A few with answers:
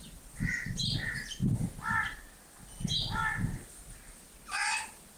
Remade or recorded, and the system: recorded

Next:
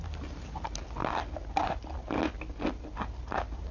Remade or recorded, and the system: recorded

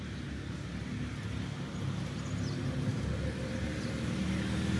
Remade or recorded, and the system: recorded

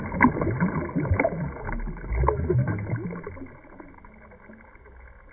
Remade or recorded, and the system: recorded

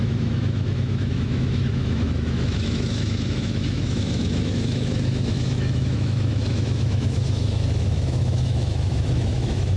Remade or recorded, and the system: remade, autoencoder, DAC-VAE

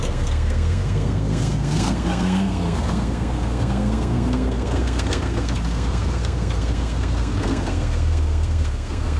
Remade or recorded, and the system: remade, codec, SNAC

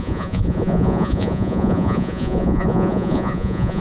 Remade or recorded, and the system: remade, vocoder, Vocos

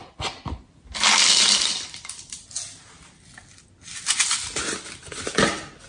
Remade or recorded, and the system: recorded